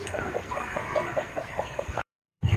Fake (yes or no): yes